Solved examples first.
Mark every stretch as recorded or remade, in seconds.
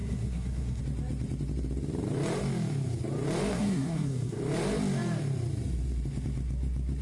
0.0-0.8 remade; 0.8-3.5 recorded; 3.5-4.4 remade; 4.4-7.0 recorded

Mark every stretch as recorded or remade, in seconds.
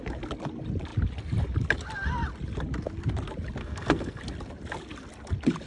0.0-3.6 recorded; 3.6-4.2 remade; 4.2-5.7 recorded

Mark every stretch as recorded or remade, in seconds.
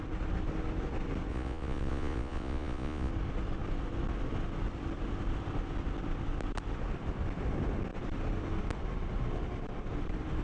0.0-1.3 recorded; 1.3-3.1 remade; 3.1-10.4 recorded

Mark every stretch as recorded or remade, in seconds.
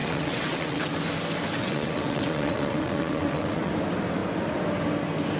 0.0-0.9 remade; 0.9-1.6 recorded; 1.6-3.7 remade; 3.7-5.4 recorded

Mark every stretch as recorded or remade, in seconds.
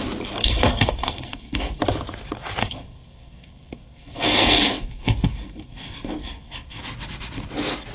0.0-0.4 recorded; 0.4-1.8 remade; 1.8-2.6 recorded; 2.6-6.8 remade; 6.8-7.9 recorded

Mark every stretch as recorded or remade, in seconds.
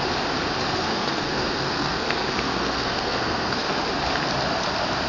0.0-0.7 recorded; 0.7-3.8 remade; 3.8-5.1 recorded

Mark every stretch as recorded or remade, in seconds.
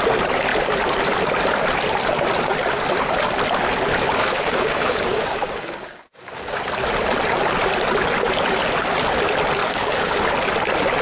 0.0-4.2 recorded; 4.2-6.7 remade; 6.7-9.6 recorded; 9.6-10.2 remade; 10.2-11.0 recorded